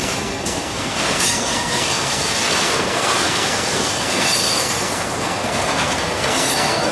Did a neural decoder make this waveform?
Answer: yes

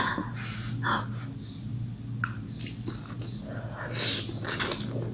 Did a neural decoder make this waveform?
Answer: no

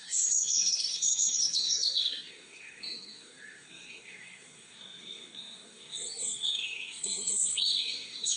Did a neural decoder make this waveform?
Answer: yes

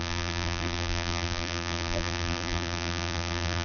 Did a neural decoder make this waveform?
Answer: yes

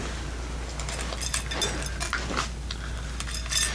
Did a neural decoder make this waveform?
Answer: no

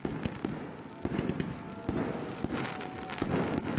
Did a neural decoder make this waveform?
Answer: no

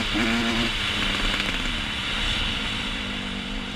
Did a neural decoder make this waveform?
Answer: no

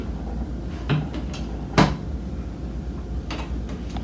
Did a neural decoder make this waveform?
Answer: no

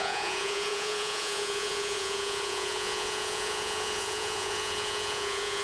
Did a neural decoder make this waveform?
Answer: yes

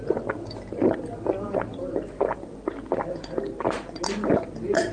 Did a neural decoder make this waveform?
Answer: no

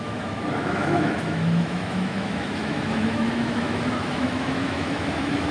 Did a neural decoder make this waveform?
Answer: yes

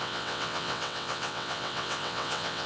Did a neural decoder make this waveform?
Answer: yes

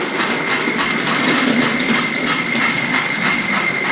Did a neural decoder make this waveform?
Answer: yes